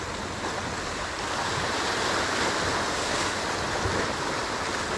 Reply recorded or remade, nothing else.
recorded